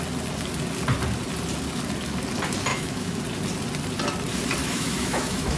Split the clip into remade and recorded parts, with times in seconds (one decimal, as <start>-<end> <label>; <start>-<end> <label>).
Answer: 0.0-2.7 recorded; 2.7-3.2 remade; 3.2-4.6 recorded; 4.6-5.6 remade